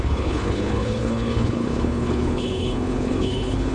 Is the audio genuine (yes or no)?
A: no